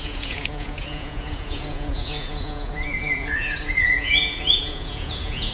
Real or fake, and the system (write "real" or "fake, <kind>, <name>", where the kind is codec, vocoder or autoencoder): fake, vocoder, Vocos